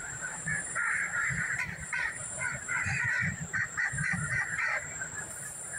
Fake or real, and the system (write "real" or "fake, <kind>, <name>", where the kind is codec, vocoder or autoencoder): fake, vocoder, BigVGAN v2